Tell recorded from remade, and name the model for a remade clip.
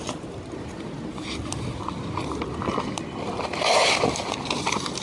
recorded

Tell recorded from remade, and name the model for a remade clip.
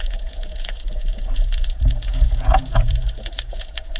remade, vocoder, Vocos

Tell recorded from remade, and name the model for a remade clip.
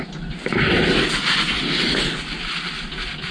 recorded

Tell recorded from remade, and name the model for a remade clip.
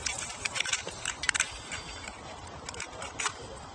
remade, vocoder, BigVGAN v2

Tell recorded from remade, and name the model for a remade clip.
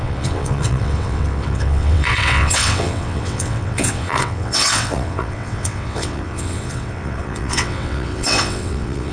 remade, vocoder, WaveNeXt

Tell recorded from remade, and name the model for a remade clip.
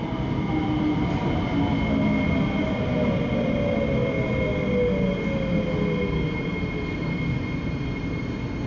recorded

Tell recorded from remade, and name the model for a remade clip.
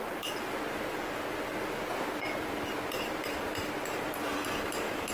recorded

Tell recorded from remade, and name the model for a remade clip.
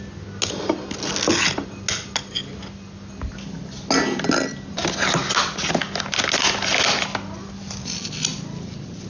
recorded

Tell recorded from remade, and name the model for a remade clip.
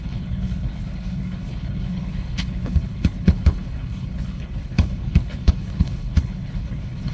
remade, codec, HILCodec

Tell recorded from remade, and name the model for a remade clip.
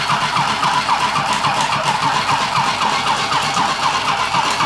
recorded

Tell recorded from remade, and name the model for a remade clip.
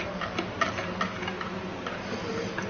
recorded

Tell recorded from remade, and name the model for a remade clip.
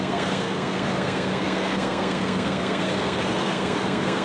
remade, codec, SNAC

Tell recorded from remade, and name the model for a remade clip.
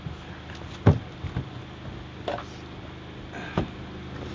recorded